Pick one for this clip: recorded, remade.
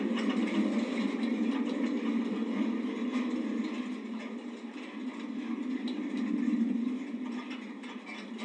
recorded